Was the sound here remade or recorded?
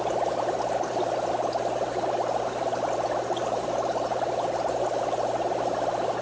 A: recorded